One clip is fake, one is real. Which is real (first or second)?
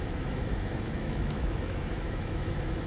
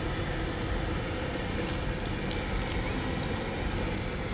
second